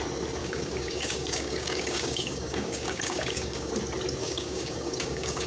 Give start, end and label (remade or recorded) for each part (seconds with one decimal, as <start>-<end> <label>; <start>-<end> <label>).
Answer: 0.0-0.4 recorded; 0.4-3.7 remade; 3.7-4.2 recorded; 4.2-5.5 remade